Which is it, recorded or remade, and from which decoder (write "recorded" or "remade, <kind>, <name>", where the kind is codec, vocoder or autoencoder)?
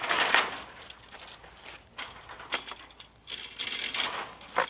recorded